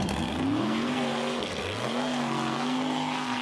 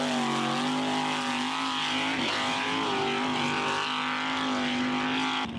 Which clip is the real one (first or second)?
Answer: second